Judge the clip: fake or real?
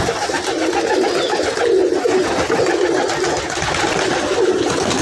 real